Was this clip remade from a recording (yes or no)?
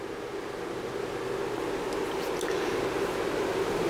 no